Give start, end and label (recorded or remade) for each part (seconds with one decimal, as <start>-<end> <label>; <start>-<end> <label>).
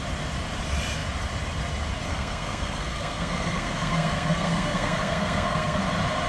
0.0-2.1 recorded; 2.1-5.8 remade; 5.8-6.3 recorded